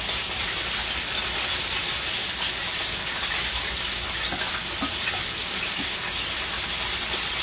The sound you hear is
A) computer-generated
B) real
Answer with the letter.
B